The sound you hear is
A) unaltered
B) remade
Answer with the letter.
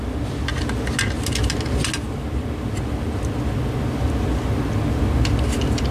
A